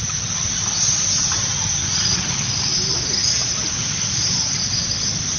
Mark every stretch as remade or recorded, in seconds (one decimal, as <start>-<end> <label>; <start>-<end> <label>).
0.0-1.8 recorded; 1.8-2.3 remade; 2.3-5.4 recorded

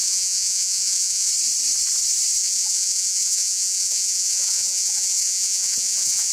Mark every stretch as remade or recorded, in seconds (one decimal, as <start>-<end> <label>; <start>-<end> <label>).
0.0-1.3 remade; 1.3-2.4 recorded; 2.4-6.3 remade

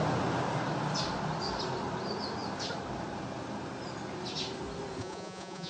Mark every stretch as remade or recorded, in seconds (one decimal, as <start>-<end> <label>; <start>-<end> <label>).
0.0-5.0 recorded; 5.0-5.7 remade

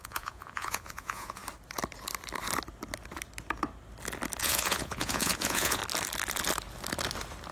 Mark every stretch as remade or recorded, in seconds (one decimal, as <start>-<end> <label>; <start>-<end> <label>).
0.0-1.4 remade; 1.4-4.4 recorded; 4.4-5.8 remade; 5.8-7.5 recorded

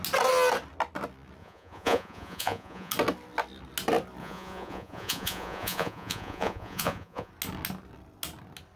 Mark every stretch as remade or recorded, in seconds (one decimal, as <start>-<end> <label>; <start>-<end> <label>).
0.0-1.4 recorded; 1.4-2.9 remade; 2.9-4.2 recorded; 4.2-7.3 remade; 7.3-8.8 recorded

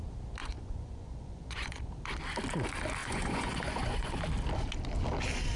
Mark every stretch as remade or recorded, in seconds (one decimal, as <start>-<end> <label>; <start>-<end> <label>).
0.0-0.4 recorded; 0.4-1.9 remade; 1.9-3.0 recorded; 3.0-4.2 remade; 4.2-5.6 recorded

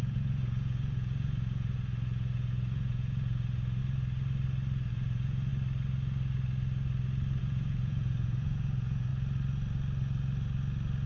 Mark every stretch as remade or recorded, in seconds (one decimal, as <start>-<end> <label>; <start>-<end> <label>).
0.0-3.8 remade; 3.8-4.9 recorded; 4.9-5.5 remade; 5.5-7.4 recorded; 7.4-9.1 remade; 9.1-11.1 recorded

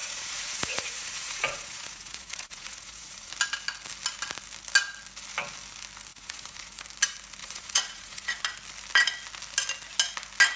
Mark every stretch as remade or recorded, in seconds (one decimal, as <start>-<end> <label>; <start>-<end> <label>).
0.0-3.3 remade; 3.3-6.1 recorded; 6.1-6.8 remade; 6.8-7.4 recorded; 7.4-8.4 remade; 8.4-10.6 recorded